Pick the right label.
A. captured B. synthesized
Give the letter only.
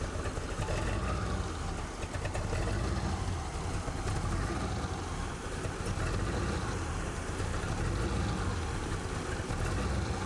A